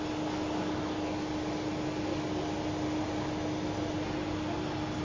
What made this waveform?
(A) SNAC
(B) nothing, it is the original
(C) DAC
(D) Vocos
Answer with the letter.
B